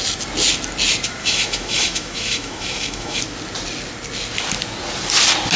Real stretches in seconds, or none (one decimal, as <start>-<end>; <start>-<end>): 0.0-1.2; 3.2-5.6

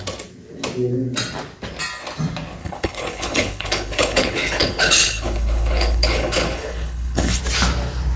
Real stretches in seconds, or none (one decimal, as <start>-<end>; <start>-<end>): 0.0-2.6; 7.4-8.2

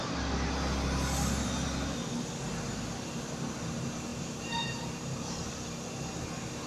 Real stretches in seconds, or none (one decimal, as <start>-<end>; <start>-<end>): 0.0-4.1; 5.3-6.7

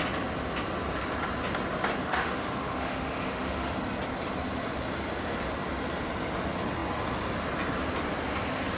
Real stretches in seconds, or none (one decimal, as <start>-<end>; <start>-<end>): 0.0-2.0; 3.8-8.8

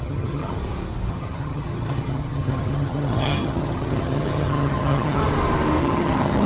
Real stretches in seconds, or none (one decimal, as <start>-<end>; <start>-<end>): 0.6-1.1; 5.2-5.8